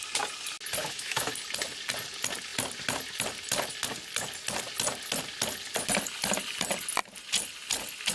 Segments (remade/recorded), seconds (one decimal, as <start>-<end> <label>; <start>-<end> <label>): 0.0-0.8 recorded; 0.8-1.3 remade; 1.3-8.1 recorded

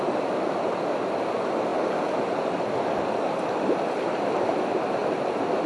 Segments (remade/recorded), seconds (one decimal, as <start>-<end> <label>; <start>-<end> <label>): 0.0-5.7 recorded

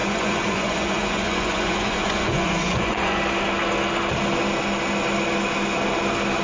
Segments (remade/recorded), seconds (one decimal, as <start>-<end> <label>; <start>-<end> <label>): 0.0-3.2 remade; 3.2-6.4 recorded

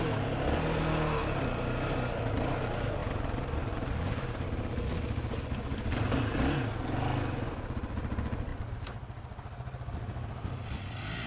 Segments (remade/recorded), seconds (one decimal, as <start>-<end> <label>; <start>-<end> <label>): 0.0-11.3 recorded

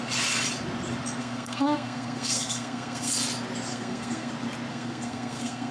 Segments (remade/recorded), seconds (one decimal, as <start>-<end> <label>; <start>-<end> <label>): 0.0-1.2 recorded; 1.2-3.1 remade; 3.1-3.7 recorded; 3.7-4.3 remade; 4.3-4.7 recorded; 4.7-5.7 remade

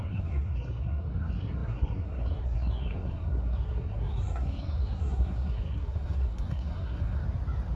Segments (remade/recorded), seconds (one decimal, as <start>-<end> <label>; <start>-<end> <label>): 0.0-7.2 remade; 7.2-7.8 recorded

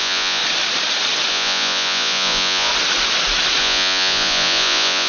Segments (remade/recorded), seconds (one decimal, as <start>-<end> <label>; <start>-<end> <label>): 0.0-0.4 remade; 0.4-1.3 recorded; 1.3-2.7 remade; 2.7-3.6 recorded; 3.6-5.1 remade

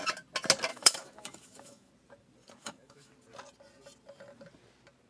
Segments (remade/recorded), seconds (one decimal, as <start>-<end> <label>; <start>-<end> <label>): 0.0-0.7 recorded; 0.7-1.9 remade; 1.9-2.6 recorded; 2.6-3.1 remade; 3.1-5.1 recorded